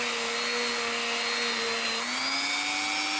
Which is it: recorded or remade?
recorded